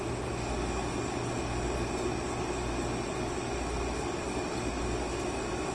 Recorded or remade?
recorded